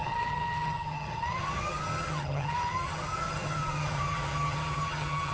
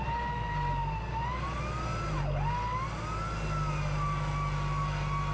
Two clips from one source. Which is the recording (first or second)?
second